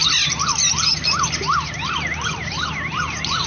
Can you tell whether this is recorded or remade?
recorded